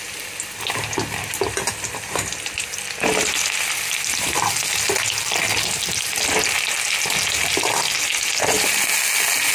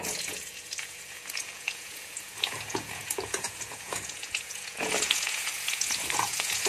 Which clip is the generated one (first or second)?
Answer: second